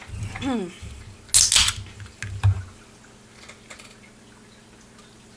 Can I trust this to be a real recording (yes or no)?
yes